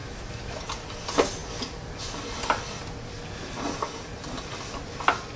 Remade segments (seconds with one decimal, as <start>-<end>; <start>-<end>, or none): 0.0-0.6